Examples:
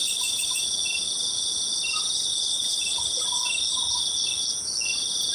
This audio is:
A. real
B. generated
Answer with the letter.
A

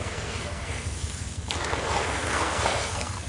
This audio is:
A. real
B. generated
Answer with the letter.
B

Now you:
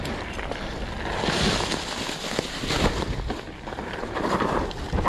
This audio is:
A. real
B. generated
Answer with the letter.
A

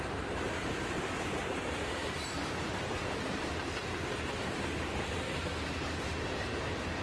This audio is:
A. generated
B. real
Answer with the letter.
A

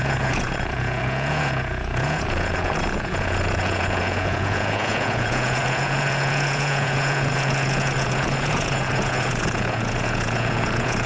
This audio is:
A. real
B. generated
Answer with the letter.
B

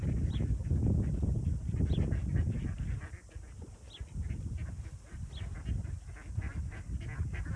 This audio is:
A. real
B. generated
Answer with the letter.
A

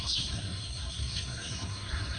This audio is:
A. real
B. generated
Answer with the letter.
B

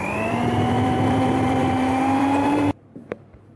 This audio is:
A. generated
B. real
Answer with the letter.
A